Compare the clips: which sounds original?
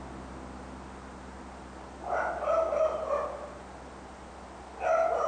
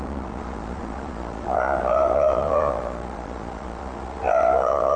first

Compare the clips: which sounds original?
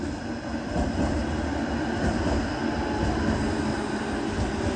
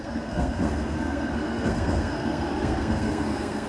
first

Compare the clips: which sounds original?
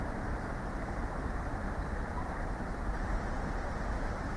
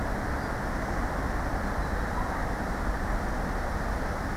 second